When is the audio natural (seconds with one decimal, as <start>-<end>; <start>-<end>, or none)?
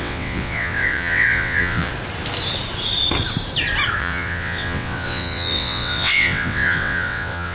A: 1.9-4.0